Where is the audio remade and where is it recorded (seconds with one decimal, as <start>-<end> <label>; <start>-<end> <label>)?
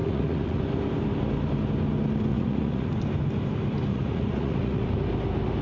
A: 0.0-0.6 remade; 0.6-2.3 recorded; 2.3-2.9 remade; 2.9-3.9 recorded; 3.9-4.9 remade; 4.9-5.6 recorded